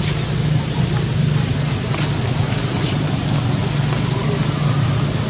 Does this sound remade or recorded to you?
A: recorded